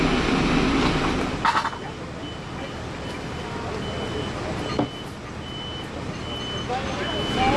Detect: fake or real real